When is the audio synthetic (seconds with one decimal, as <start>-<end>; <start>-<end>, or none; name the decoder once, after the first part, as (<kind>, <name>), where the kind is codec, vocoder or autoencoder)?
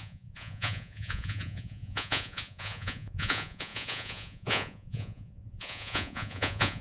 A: 0.0-6.8 (vocoder, Vocos)